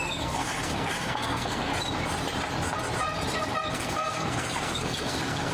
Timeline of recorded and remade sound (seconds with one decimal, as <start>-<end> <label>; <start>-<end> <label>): 0.0-1.7 remade; 1.7-3.7 recorded; 3.7-5.5 remade